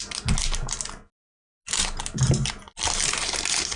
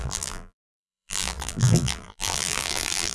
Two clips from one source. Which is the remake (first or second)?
second